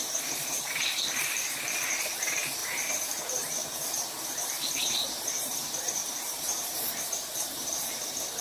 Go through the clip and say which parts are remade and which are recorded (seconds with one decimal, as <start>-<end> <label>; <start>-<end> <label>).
0.0-8.4 remade